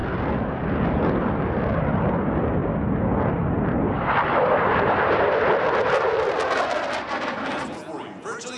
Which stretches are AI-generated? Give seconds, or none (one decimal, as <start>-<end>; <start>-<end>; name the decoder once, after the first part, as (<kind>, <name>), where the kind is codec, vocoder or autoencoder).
2.1-2.6 (vocoder, BigVGAN v2); 7.3-8.6